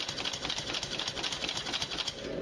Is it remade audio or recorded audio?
recorded